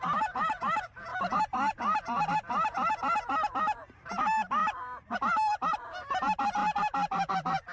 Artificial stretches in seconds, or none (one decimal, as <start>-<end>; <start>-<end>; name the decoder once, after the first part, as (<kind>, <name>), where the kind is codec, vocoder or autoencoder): 0.0-1.1 (vocoder, BigVGAN v2); 1.7-7.7